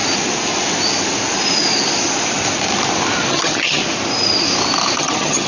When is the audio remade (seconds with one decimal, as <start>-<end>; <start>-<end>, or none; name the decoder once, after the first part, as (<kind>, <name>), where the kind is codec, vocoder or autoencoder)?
3.3-3.8 (vocoder, HiFi-GAN); 5.0-5.5